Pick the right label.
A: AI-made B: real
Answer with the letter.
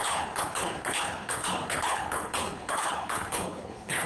A